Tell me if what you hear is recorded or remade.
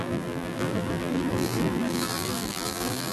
remade